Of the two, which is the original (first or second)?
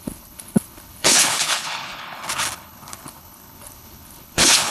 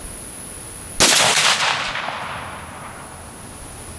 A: second